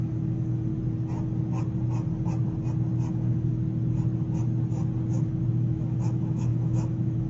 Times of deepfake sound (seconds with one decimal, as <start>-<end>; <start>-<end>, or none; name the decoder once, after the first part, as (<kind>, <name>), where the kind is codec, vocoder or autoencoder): 0.0-0.7 (autoencoder, DAC-VAE); 3.1-3.5; 5.5-7.3